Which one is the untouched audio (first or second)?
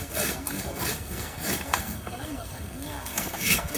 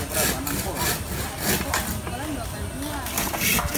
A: second